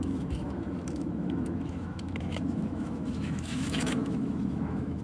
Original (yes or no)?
no